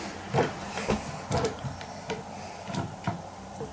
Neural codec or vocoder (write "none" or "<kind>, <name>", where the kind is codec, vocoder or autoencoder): none